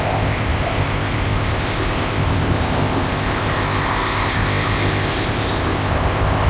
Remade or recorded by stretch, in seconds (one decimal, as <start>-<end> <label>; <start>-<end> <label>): 0.0-6.5 remade